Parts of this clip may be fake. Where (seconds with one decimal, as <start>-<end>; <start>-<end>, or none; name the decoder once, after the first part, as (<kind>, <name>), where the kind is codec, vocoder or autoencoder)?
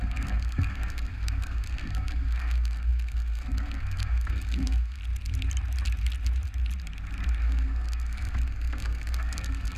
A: 0.0-5.0 (codec, SNAC); 7.4-9.8